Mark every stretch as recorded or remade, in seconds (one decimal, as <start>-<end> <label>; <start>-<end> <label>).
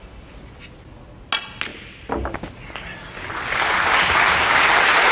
0.0-5.1 recorded